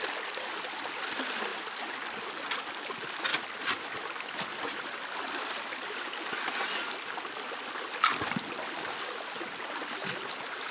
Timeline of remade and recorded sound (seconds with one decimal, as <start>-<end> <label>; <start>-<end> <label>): 0.0-3.3 recorded; 3.3-5.5 remade; 5.5-10.7 recorded